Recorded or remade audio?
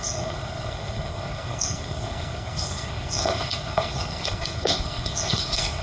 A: remade